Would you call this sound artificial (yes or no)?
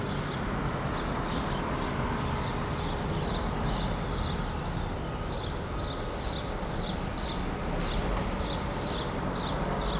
no